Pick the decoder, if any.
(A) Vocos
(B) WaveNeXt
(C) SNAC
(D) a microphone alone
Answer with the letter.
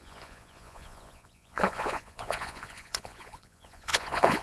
A